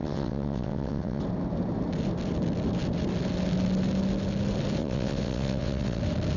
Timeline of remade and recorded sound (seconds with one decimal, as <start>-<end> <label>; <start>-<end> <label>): 0.0-1.2 remade; 1.2-4.8 recorded; 4.8-6.0 remade; 6.0-6.4 recorded